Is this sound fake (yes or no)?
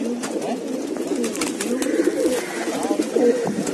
no